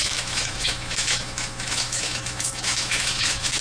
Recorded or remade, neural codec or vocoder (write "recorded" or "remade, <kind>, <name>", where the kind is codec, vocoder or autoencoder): remade, autoencoder, DAC-VAE